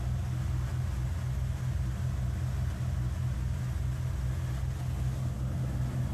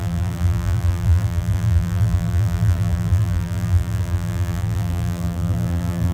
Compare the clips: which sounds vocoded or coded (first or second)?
second